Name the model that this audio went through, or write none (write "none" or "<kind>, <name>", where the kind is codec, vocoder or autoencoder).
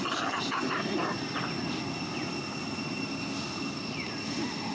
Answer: none